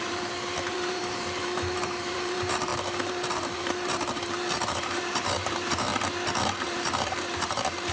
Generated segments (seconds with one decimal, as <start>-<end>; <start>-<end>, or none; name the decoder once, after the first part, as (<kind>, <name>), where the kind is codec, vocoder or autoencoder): 0.0-5.9 (vocoder, BigVGAN v2); 6.4-7.9

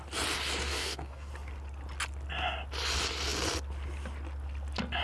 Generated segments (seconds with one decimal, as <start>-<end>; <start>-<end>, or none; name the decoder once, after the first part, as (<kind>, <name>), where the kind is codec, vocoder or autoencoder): 0.6-1.3 (codec, DAC)